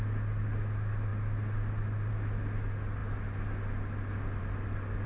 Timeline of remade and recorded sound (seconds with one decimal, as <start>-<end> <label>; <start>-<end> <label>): 0.0-5.1 recorded